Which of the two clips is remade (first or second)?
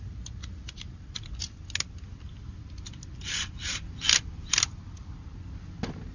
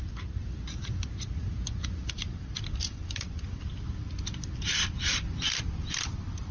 second